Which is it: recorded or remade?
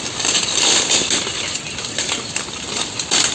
recorded